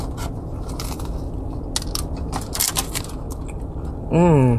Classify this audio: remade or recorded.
recorded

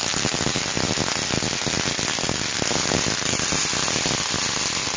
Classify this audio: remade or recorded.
recorded